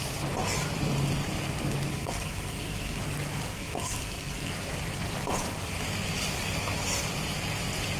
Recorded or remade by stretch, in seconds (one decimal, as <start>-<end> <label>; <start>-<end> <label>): 0.0-1.9 recorded; 1.9-3.0 remade; 3.0-3.5 recorded; 3.5-4.5 remade; 4.5-8.0 recorded